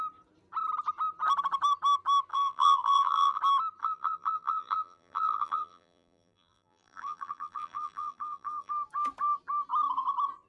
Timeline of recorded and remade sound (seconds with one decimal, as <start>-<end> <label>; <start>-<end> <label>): 0.0-2.3 recorded; 2.3-3.4 remade; 3.4-3.8 recorded; 3.8-8.7 remade; 8.7-10.5 recorded